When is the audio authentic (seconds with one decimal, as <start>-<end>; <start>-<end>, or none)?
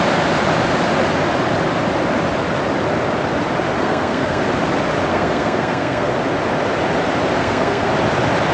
0.0-3.8; 4.4-5.1; 6.1-7.4; 7.9-8.5